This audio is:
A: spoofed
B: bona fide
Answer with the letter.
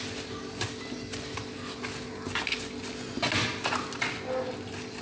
B